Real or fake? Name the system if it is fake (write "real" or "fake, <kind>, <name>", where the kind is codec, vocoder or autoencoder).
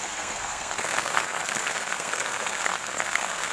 fake, codec, SNAC